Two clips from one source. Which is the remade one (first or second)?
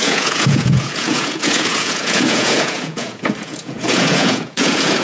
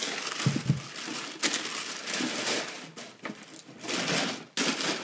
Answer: first